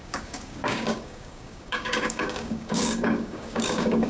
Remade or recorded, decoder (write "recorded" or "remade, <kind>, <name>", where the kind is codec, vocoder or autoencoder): remade, codec, DAC